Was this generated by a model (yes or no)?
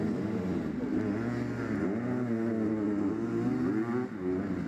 no